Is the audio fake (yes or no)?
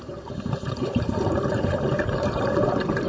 yes